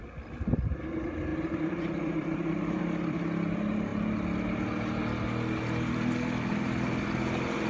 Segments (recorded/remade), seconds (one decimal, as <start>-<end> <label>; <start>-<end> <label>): 0.0-1.3 recorded; 1.3-2.8 remade; 2.8-7.7 recorded